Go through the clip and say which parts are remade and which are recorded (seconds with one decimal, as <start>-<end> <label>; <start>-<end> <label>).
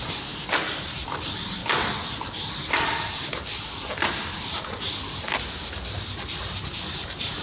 0.0-7.4 recorded